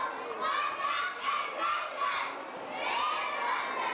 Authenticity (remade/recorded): recorded